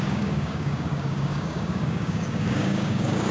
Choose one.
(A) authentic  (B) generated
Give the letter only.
B